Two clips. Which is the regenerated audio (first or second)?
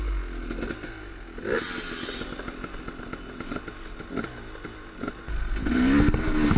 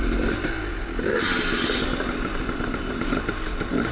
second